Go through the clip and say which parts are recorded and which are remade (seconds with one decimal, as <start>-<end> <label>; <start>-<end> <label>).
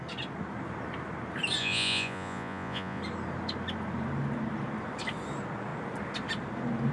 0.0-1.6 recorded; 1.6-3.0 remade; 3.0-6.9 recorded